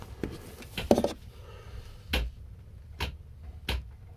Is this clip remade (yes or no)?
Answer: no